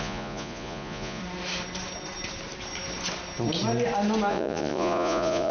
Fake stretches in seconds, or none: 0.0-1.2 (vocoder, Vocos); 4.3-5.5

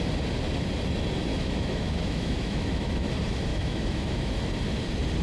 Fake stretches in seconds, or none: 1.3-3.1 (autoencoder, DAC-VAE); 3.5-4.3

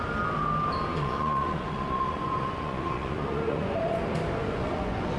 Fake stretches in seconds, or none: 0.9-4.0 (vocoder, Vocos); 4.4-5.2

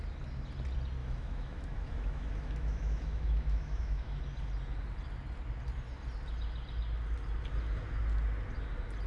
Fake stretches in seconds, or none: 1.0-4.2 (autoencoder, DAC-VAE)

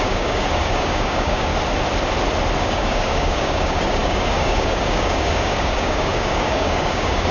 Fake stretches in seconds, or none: 0.0-1.5 (codec, DAC); 2.6-7.3

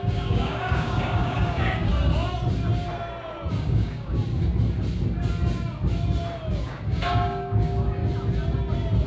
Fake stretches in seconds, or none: 0.0-1.9 (codec, DAC); 3.5-4.2; 6.5-8.0